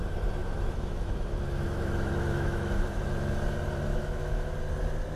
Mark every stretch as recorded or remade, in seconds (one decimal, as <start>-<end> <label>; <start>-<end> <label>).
0.0-0.4 recorded; 0.4-3.3 remade; 3.3-3.9 recorded; 3.9-4.5 remade; 4.5-5.2 recorded